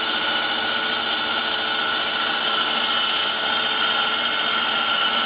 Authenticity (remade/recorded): recorded